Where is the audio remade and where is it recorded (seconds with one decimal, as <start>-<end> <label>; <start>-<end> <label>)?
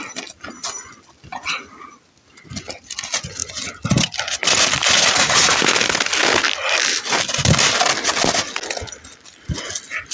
0.0-10.1 recorded